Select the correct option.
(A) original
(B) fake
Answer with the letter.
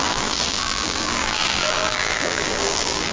B